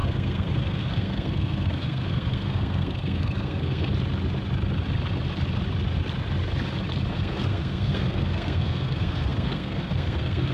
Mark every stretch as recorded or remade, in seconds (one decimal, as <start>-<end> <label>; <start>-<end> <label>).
0.0-3.9 remade; 3.9-7.1 recorded; 7.1-10.5 remade